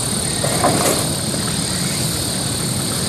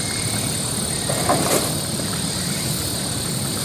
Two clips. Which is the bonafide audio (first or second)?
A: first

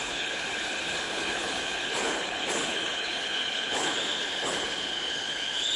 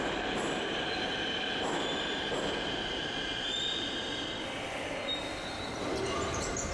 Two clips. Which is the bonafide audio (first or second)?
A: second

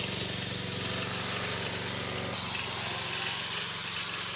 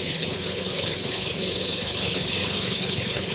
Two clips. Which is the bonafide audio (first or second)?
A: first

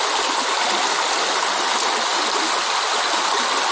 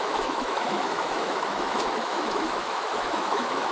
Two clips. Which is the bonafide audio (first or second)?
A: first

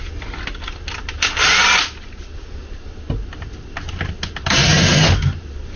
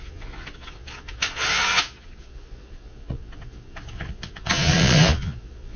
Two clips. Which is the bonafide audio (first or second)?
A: first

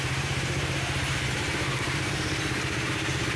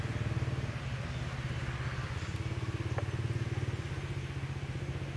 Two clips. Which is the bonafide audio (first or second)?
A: second